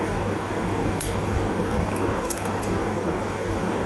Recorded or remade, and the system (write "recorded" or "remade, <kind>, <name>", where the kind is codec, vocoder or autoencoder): remade, codec, DAC